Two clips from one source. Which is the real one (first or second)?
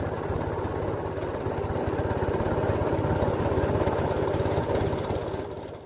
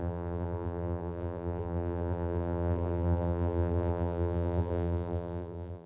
first